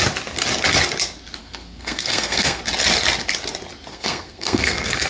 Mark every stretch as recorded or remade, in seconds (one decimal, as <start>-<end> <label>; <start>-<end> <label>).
0.0-1.4 recorded; 1.4-2.6 remade; 2.6-3.9 recorded; 3.9-5.1 remade